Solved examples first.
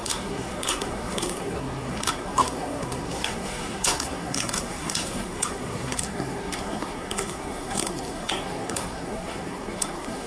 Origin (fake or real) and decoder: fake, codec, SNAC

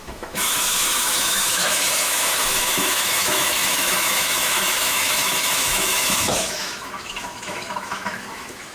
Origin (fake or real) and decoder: fake, autoencoder, DAC-VAE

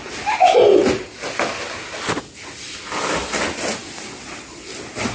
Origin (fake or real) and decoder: real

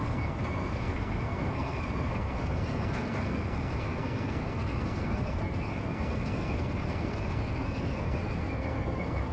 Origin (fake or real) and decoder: fake, codec, SNAC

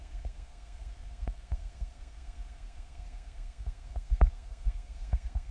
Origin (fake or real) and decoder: fake, codec, SNAC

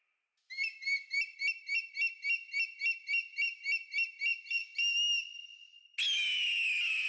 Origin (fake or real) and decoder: real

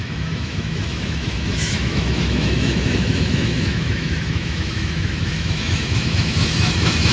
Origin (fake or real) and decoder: fake, autoencoder, DAC-VAE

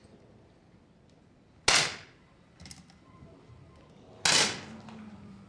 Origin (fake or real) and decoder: real